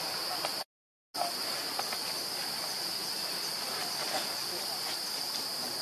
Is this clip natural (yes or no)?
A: yes